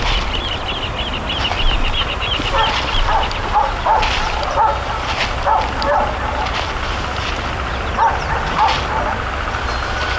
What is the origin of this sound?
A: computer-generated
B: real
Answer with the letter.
B